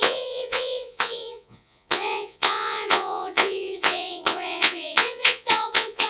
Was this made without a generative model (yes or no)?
no